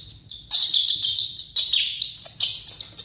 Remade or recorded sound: recorded